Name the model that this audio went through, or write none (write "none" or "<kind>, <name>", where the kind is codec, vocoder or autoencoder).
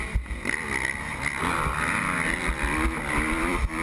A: none